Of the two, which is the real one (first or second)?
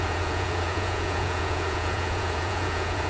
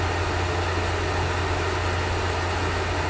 second